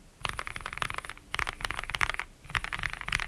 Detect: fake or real real